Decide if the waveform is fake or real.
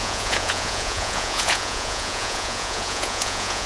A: fake